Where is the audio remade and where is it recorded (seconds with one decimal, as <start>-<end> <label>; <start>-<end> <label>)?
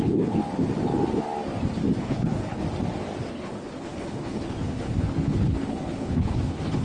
0.0-0.4 remade; 0.4-2.0 recorded; 2.0-2.6 remade; 2.6-3.3 recorded; 3.3-6.8 remade